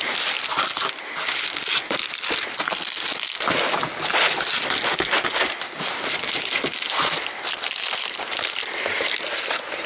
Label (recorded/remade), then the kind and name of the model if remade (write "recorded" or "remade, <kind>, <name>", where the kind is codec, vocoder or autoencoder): recorded